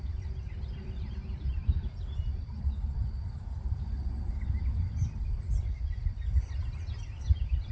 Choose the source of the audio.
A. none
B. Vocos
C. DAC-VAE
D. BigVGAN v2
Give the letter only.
D